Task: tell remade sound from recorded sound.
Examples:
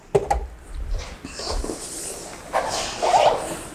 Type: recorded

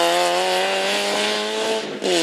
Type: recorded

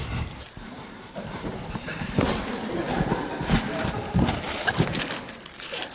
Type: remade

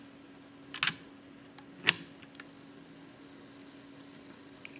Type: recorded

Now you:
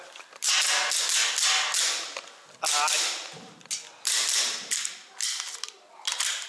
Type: recorded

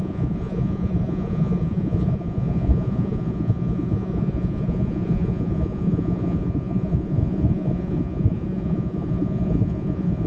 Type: remade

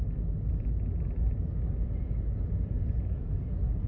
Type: recorded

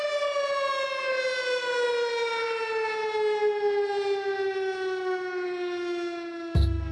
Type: recorded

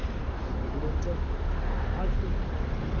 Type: recorded